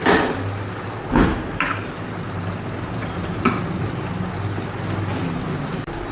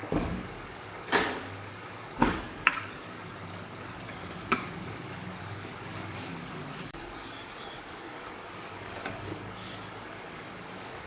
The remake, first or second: second